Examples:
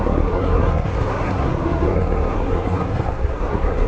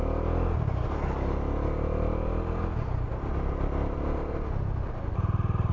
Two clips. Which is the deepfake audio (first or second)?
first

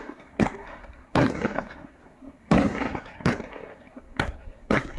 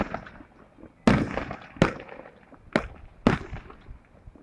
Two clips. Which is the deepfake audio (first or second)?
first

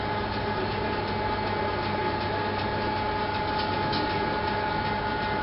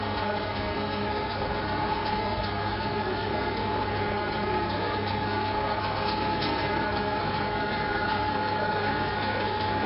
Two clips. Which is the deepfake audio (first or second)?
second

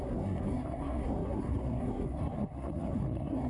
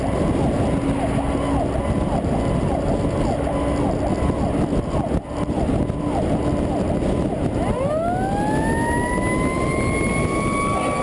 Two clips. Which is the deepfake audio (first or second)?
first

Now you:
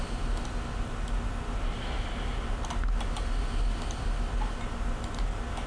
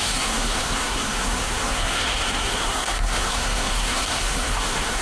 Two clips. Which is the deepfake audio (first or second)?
second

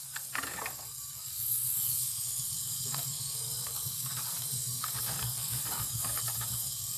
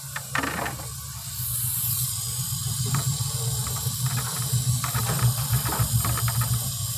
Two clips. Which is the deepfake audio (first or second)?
first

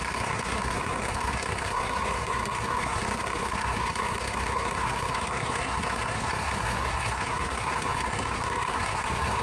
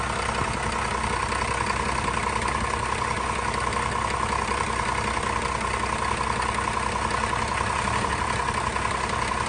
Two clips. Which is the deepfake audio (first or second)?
first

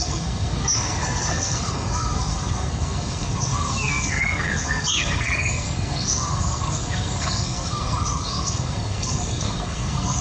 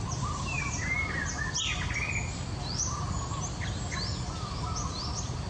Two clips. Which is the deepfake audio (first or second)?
first